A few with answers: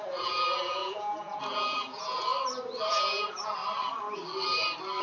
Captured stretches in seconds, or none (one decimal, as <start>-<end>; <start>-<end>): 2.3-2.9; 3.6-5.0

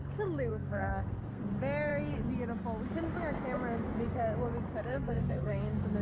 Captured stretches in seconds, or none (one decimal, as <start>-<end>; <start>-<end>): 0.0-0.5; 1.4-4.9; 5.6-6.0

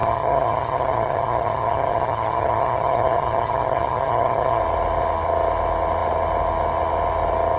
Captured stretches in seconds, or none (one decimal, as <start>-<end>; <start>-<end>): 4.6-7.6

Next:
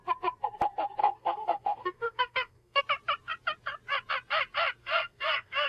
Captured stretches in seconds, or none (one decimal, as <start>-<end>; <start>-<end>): 0.0-1.0; 2.8-4.8

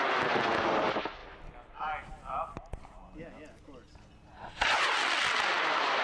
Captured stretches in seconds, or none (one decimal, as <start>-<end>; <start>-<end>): 0.0-6.0

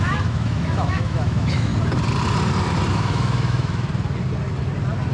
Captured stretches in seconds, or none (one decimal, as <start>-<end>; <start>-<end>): 1.7-2.9; 3.9-5.1